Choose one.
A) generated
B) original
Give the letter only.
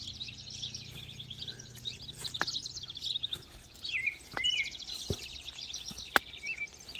B